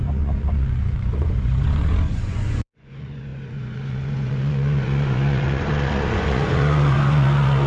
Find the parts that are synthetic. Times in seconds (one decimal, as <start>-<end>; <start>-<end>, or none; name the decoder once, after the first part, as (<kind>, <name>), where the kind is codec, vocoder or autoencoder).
0.0-7.7 (vocoder, Vocos)